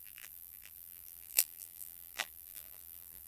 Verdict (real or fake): fake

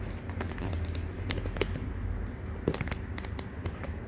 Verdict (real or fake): real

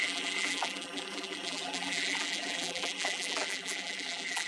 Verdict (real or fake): fake